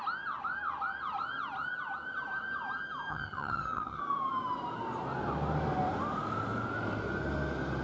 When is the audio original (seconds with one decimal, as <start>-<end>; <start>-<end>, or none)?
0.0-3.1; 4.0-7.8